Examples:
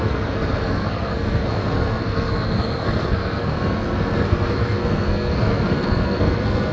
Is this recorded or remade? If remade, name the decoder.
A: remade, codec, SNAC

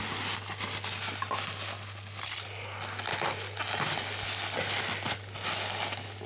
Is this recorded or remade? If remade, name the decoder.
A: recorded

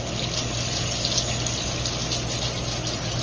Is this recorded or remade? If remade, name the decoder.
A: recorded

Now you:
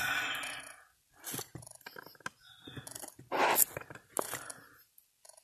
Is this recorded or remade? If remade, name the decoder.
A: recorded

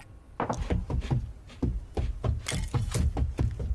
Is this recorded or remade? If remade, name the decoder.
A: recorded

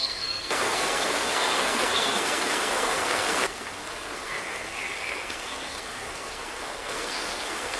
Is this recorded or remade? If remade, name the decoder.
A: remade, codec, SNAC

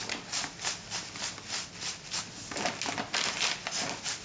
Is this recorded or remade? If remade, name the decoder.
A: recorded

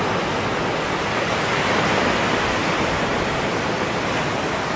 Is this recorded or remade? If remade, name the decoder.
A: recorded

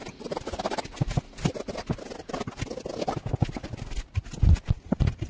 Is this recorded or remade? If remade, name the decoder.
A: recorded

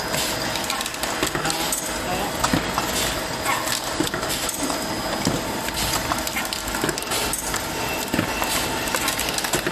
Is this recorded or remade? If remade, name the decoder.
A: recorded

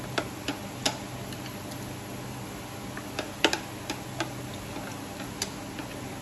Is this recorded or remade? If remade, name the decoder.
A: recorded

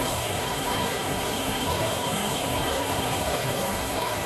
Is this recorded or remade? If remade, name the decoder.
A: remade, codec, SNAC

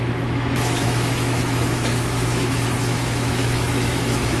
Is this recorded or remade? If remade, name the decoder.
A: remade, autoencoder, DAC-VAE